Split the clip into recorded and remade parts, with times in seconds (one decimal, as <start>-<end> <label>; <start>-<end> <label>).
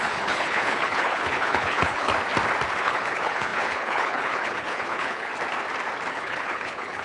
0.0-2.1 remade; 2.1-2.8 recorded; 2.8-5.3 remade; 5.3-6.1 recorded; 6.1-7.0 remade